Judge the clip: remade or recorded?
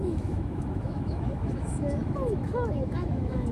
remade